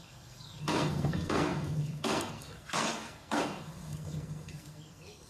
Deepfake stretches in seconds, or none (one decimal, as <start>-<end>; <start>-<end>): 0.0-5.3